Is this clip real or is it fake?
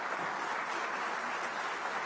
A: real